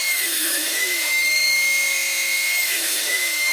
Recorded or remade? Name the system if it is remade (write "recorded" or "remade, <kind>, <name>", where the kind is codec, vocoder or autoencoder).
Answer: remade, autoencoder, DAC-VAE